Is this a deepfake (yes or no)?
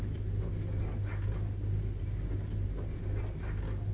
no